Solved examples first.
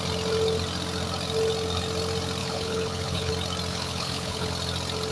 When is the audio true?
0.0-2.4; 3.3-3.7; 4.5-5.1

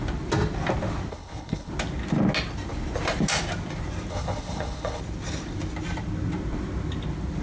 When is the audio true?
0.0-1.1; 1.7-4.1; 5.0-7.4